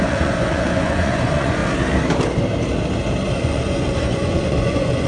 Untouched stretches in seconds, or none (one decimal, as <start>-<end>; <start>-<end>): 1.6-3.4